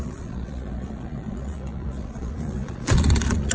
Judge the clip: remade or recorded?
remade